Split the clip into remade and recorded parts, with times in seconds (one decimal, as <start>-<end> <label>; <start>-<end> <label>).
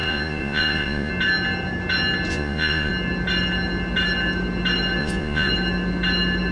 0.0-1.1 remade; 1.1-2.3 recorded; 2.3-2.9 remade; 2.9-5.0 recorded; 5.0-5.5 remade; 5.5-6.5 recorded